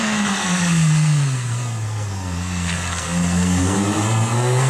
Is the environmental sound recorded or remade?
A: remade